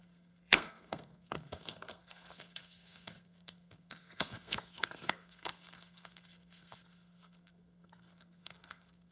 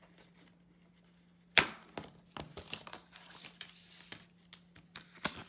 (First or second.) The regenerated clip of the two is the first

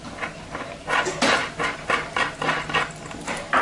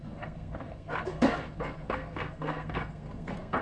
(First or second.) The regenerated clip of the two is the second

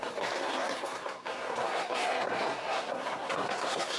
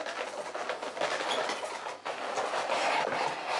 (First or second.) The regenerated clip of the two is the first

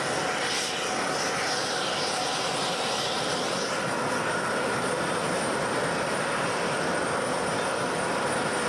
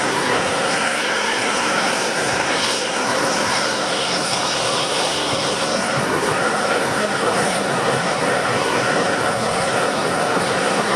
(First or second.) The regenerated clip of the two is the second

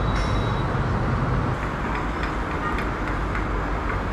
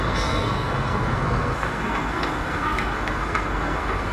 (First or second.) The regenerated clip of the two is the second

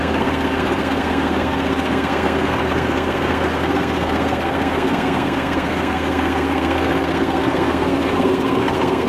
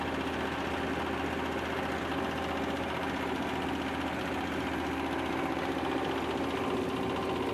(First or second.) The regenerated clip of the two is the first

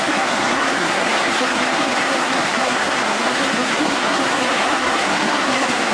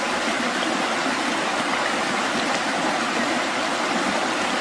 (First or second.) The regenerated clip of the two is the first